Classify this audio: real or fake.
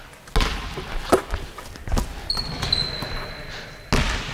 real